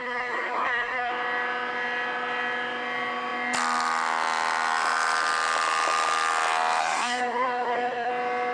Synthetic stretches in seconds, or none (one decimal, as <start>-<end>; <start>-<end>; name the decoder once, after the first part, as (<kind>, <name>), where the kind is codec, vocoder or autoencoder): 0.0-1.1 (codec, SNAC); 6.8-8.1